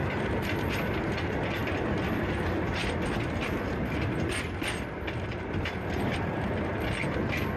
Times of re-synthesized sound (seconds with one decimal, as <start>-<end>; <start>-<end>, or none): none